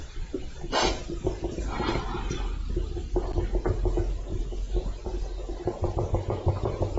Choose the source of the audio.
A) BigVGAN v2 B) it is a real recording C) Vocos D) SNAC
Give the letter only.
B